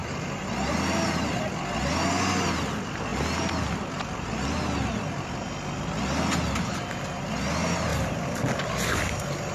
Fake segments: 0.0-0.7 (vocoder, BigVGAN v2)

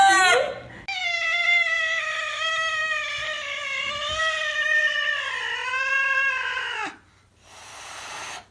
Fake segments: 5.6-8.0 (vocoder, BigVGAN v2)

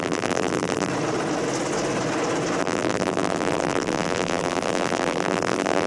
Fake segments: 0.0-0.9 (vocoder, BigVGAN v2); 2.6-5.9

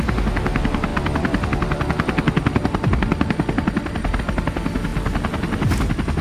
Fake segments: 0.9-4.2 (vocoder, BigVGAN v2)

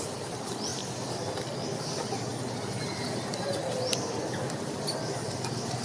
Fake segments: none

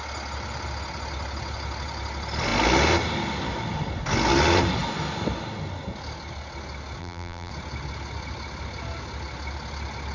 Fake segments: 7.0-7.5 (vocoder, BigVGAN v2)

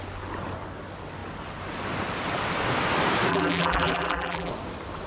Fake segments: 3.3-4.5 (vocoder, BigVGAN v2)